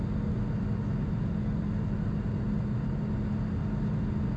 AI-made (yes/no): no